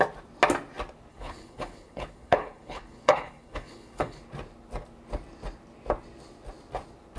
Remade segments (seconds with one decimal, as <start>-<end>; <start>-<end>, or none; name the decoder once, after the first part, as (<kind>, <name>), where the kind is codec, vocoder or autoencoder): 1.1-4.2 (codec, HILCodec)